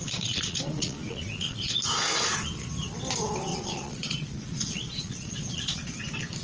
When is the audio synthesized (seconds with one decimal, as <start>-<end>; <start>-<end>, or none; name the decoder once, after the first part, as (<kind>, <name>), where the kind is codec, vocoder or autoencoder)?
0.0-1.8 (vocoder, Vocos); 3.5-5.8